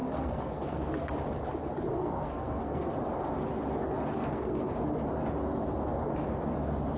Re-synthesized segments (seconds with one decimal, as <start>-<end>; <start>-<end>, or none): 0.0-1.1; 1.9-2.9; 4.1-4.7